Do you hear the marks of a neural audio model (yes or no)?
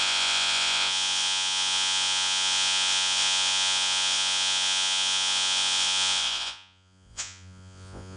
yes